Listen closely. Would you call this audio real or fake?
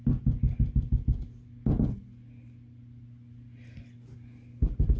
real